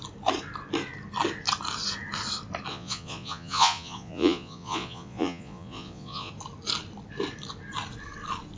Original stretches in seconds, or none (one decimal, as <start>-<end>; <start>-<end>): 0.0-2.7; 6.3-8.6